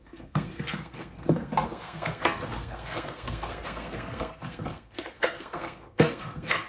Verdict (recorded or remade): remade